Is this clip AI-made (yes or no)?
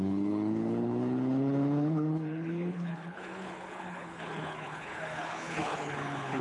yes